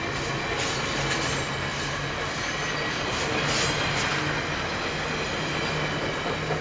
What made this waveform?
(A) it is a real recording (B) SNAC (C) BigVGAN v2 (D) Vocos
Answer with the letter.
A